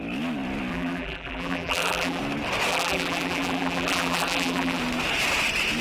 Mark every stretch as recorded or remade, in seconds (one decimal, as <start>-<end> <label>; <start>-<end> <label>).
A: 0.0-0.7 recorded; 0.7-2.2 remade; 2.2-2.7 recorded; 2.7-4.8 remade; 4.8-5.8 recorded